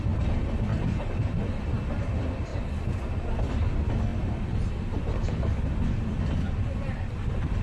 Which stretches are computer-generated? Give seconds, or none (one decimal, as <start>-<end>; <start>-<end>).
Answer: 0.7-1.3; 2.5-3.1